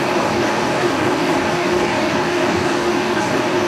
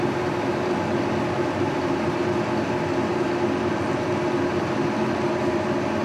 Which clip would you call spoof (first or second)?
first